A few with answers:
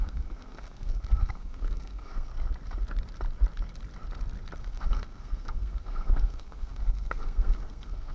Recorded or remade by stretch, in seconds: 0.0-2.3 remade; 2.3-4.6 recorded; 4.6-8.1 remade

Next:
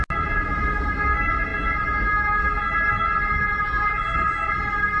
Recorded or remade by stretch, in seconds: 0.0-5.0 recorded